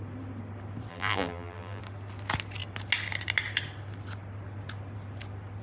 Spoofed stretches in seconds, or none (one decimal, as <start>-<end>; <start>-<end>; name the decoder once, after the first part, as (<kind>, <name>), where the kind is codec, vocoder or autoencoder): 0.9-1.8 (vocoder, BigVGAN v2)